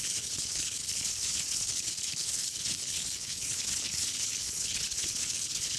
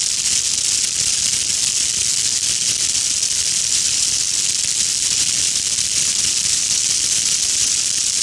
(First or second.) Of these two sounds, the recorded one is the second